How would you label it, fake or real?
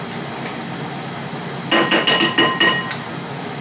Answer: real